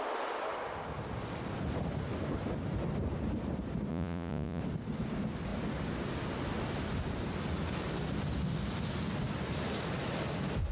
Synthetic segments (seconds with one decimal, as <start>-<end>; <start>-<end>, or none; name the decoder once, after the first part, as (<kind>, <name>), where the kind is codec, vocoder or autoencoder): 3.9-4.6 (vocoder, Vocos)